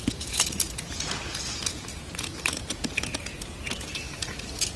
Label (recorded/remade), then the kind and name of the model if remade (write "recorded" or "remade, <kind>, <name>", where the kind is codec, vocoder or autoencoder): remade, vocoder, Vocos